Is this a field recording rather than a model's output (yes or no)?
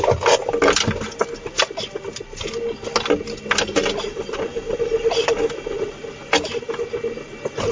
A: yes